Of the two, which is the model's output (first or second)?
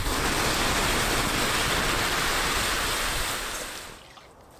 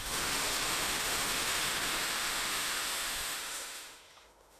second